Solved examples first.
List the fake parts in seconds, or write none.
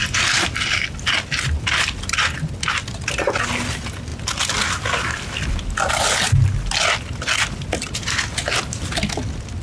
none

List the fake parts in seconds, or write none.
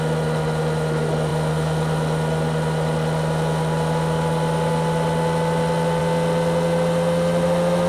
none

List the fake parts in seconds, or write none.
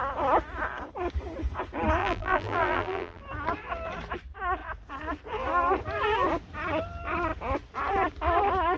2.0-3.2 (vocoder, BigVGAN v2)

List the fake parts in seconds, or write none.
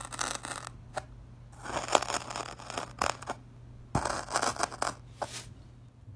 none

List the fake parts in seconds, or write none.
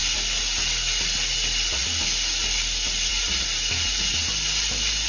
3.1-4.2 (vocoder, BigVGAN v2)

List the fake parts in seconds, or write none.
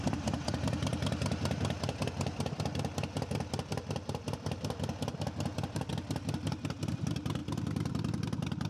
7.4-8.7 (vocoder, BigVGAN v2)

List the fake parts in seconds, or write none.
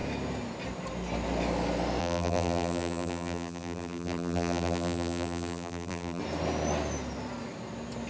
2.0-6.2 (vocoder, BigVGAN v2)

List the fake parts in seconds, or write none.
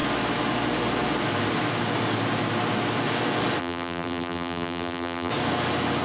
3.6-5.3 (vocoder, BigVGAN v2)